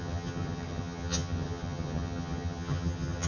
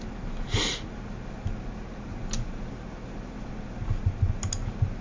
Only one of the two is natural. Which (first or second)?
second